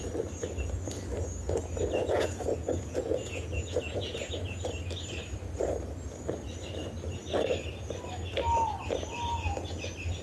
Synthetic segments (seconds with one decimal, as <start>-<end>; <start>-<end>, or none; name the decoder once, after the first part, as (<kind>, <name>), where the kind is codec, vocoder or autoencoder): 2.0-4.6 (vocoder, Vocos)

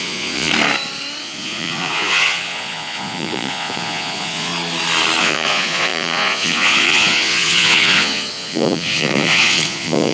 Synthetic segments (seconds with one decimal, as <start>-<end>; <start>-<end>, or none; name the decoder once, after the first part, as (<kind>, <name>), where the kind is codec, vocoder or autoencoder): 0.0-0.5 (vocoder, Vocos); 1.2-4.5; 5.2-10.1

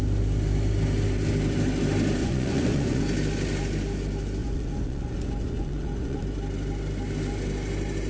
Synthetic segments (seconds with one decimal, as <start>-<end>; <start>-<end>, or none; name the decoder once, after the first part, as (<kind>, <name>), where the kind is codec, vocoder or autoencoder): 2.2-3.0 (vocoder, Vocos); 4.4-6.2